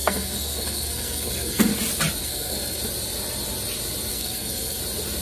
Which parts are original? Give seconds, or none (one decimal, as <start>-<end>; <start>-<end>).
1.7-2.2; 2.8-4.1; 4.8-5.2

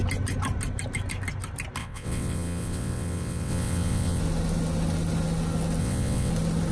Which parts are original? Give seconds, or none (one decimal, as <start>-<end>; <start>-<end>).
0.0-1.8; 4.2-5.8; 6.3-6.7

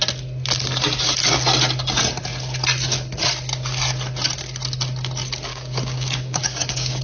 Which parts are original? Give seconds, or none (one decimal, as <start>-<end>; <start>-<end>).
0.0-5.5